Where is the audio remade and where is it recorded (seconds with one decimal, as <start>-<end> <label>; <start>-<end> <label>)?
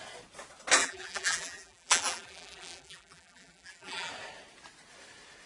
0.0-0.8 recorded; 0.8-4.1 remade; 4.1-5.5 recorded